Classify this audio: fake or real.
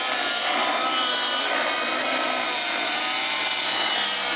real